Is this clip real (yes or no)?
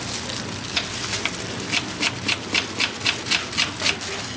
yes